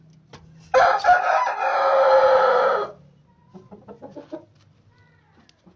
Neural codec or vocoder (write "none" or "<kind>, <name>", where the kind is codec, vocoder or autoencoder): none